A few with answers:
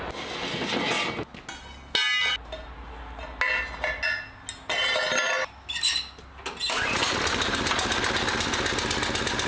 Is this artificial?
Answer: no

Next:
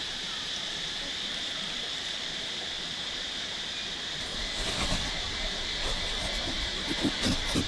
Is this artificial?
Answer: yes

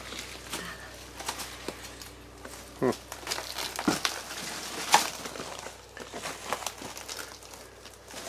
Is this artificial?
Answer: no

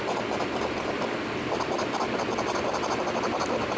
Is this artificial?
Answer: no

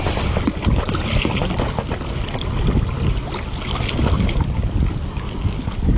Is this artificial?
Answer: no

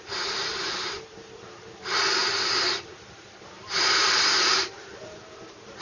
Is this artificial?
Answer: yes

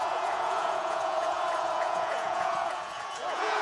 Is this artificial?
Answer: yes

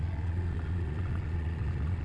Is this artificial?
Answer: yes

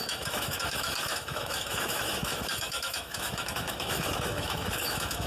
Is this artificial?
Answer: yes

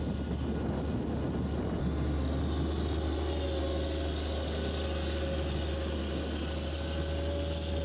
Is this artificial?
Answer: no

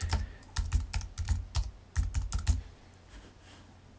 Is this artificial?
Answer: no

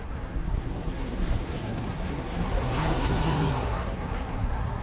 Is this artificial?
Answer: yes